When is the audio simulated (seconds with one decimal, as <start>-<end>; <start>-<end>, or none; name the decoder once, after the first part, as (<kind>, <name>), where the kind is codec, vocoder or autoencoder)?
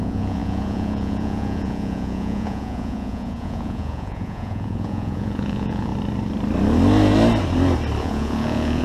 0.0-5.9 (vocoder, Vocos); 8.0-8.8